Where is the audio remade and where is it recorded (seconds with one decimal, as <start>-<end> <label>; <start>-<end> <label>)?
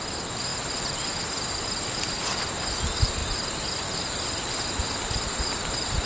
0.0-6.1 recorded